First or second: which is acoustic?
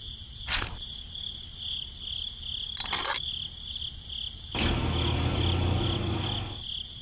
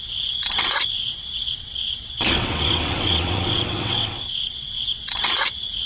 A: first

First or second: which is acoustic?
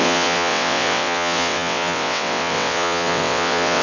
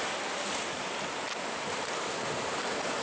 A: second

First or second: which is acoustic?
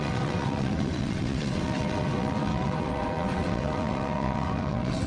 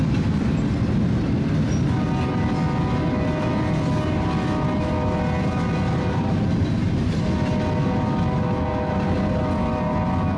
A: second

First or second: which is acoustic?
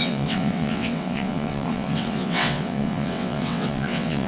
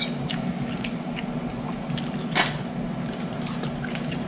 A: second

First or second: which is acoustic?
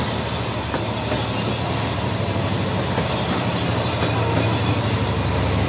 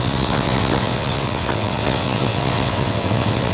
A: first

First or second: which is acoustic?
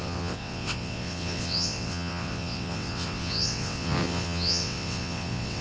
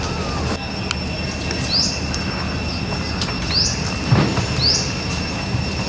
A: second